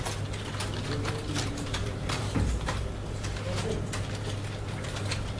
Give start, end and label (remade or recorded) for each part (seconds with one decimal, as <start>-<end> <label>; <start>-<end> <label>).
0.0-1.8 recorded; 1.8-2.8 remade; 2.8-5.4 recorded